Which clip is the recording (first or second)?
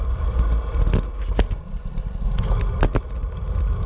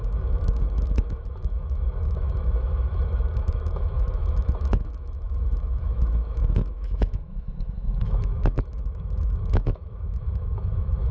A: first